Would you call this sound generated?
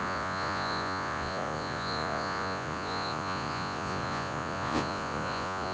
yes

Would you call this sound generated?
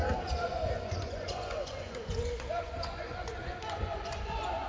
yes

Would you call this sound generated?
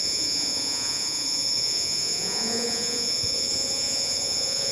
yes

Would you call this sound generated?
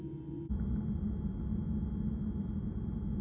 no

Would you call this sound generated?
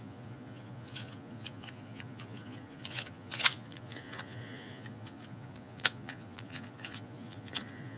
yes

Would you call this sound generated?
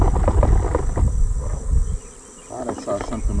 no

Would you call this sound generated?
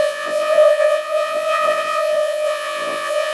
yes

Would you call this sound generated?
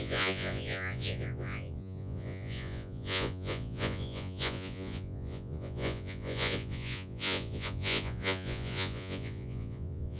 yes